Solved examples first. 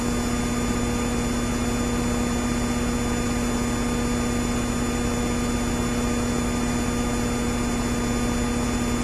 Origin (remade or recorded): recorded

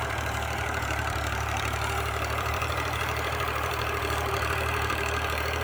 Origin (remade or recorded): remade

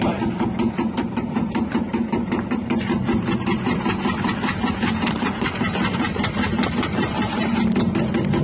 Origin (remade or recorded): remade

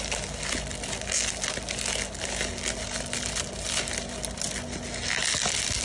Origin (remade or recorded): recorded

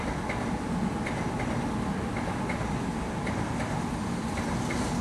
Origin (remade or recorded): recorded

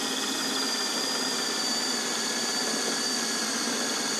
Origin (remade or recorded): remade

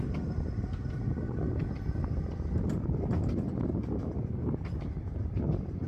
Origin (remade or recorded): recorded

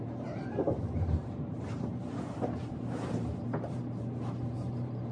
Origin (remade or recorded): remade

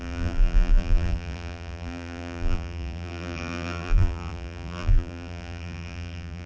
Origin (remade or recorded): remade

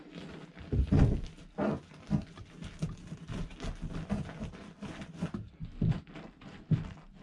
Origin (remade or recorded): recorded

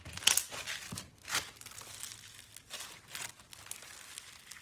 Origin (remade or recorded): recorded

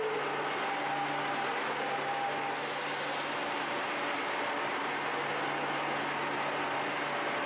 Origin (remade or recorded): recorded